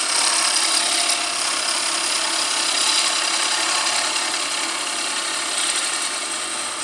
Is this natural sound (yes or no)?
yes